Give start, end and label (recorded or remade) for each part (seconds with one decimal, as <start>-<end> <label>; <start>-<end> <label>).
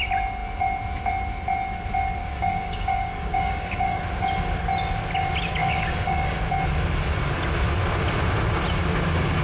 0.0-2.2 recorded; 2.2-4.0 remade; 4.0-5.6 recorded; 5.6-6.4 remade; 6.4-9.4 recorded